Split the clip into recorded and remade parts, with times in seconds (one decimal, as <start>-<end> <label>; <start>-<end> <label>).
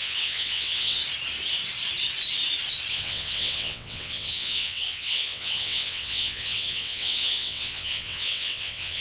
0.0-1.0 remade; 1.0-2.9 recorded; 2.9-9.0 remade